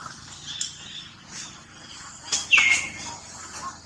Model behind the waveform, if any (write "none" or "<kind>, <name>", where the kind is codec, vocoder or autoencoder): none